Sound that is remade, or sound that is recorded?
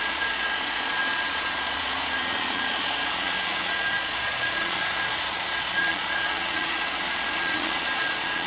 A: remade